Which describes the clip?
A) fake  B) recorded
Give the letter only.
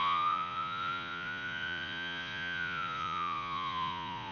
A